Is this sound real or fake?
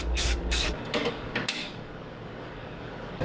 fake